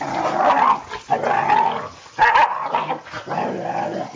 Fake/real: real